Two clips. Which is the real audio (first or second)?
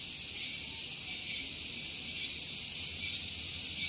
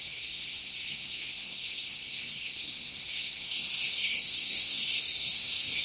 first